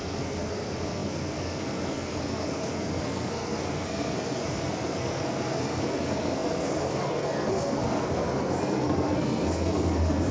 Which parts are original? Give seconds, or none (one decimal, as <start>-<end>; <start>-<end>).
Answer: none

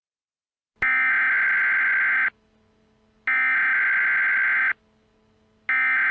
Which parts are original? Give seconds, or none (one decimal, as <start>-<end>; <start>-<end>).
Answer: 0.0-6.1

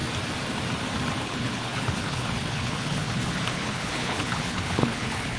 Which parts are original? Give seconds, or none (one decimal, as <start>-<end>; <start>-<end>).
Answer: 0.0-1.2

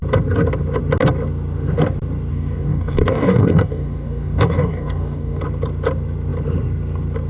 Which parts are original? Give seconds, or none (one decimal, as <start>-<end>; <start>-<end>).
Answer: 0.0-2.3; 5.4-7.3